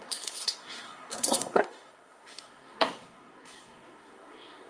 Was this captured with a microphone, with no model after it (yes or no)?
no